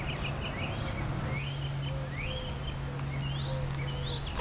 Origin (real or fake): real